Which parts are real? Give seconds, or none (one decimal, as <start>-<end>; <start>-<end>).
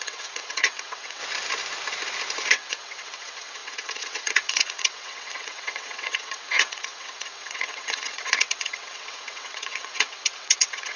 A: 1.2-2.5